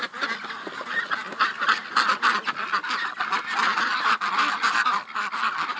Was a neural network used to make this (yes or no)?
no